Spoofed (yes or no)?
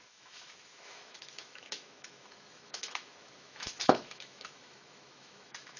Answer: yes